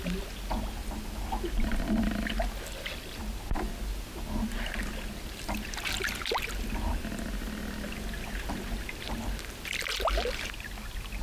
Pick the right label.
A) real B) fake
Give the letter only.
A